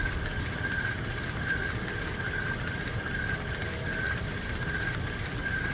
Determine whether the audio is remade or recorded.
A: recorded